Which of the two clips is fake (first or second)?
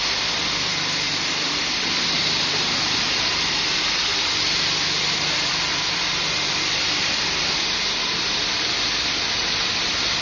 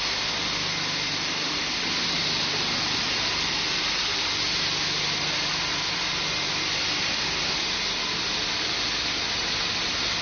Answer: first